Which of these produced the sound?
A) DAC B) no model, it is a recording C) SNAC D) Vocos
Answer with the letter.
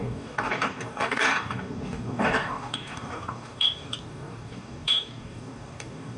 A